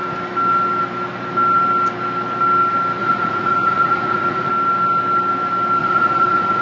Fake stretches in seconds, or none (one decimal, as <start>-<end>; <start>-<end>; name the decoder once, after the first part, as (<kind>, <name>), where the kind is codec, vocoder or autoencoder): 3.0-4.5 (vocoder, Vocos); 5.8-6.6